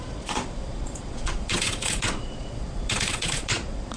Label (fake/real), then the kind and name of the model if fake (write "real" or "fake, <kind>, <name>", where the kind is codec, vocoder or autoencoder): fake, vocoder, Vocos